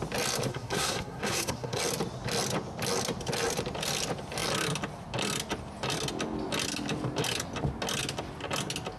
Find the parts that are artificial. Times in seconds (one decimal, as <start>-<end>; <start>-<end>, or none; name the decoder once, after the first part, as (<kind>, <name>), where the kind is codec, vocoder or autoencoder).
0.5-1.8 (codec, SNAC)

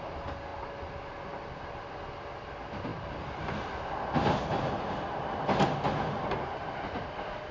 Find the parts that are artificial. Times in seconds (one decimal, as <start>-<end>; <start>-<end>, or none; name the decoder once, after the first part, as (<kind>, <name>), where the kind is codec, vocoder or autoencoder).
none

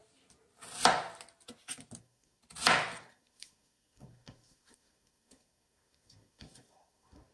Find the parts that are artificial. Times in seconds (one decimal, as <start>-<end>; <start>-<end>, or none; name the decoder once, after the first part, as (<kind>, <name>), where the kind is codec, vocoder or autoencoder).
2.0-2.4 (codec, SNAC); 3.0-7.3

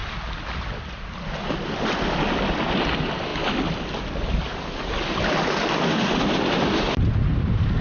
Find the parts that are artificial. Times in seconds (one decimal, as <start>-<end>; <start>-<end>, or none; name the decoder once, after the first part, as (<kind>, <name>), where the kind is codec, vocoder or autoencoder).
none

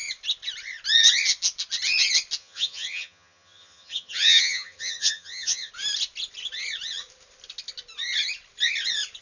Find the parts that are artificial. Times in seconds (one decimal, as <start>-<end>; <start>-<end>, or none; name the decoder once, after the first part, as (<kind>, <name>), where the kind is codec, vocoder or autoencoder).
2.4-5.7 (vocoder, HiFi-GAN)

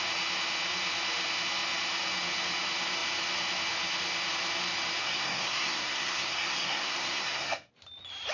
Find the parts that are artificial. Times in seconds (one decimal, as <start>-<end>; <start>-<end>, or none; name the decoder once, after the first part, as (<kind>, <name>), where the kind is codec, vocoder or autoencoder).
5.0-7.7 (codec, SNAC)